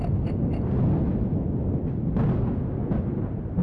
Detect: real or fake real